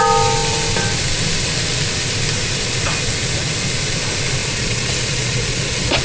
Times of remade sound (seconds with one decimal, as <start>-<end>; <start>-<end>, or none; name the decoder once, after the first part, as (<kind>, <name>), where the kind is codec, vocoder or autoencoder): 4.4-6.0 (vocoder, Vocos)